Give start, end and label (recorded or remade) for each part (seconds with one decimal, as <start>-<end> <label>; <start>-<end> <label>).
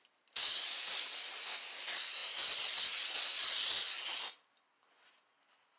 0.0-5.8 recorded